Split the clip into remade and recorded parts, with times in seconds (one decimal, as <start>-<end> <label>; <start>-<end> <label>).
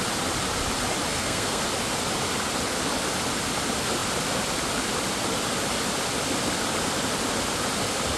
0.0-1.1 recorded; 1.1-1.6 remade; 1.6-8.2 recorded